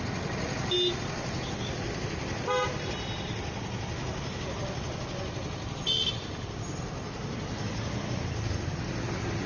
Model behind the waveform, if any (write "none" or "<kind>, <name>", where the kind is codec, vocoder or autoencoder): none